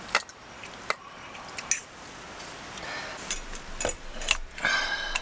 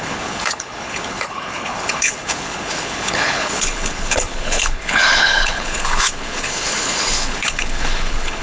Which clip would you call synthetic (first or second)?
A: second